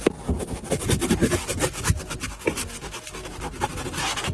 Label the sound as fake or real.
real